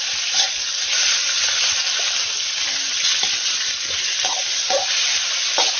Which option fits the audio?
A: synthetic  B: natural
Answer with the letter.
B